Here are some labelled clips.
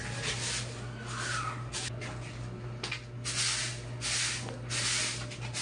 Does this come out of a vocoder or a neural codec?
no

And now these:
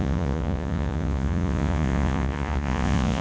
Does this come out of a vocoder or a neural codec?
yes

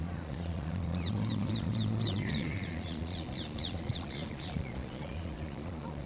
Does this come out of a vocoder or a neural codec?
yes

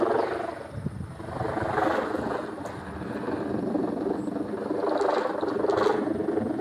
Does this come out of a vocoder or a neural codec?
no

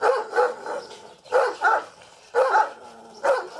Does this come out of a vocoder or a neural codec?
no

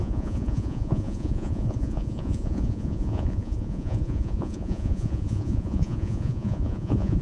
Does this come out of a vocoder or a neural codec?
yes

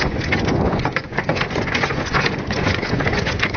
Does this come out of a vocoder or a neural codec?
yes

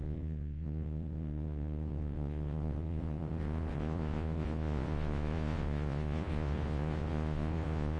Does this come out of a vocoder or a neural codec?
yes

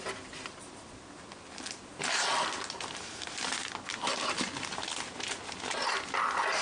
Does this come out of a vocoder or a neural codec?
no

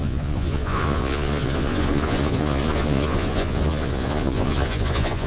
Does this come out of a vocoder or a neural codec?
yes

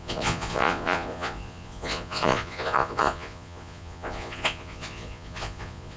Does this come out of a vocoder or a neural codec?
yes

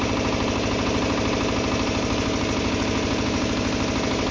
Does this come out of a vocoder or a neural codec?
no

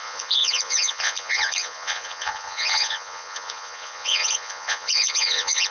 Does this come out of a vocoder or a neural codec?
yes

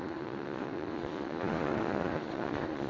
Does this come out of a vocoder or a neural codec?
yes